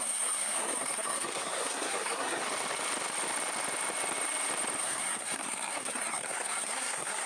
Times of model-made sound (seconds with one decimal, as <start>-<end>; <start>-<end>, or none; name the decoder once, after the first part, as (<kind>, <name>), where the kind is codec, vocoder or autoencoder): 0.0-2.4 (codec, SNAC); 4.8-7.3